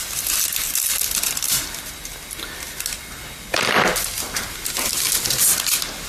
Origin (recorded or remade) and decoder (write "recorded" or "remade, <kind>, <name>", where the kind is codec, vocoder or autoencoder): recorded